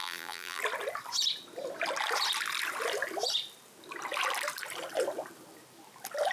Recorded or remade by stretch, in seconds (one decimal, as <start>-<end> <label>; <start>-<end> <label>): 0.0-0.6 remade; 0.6-6.3 recorded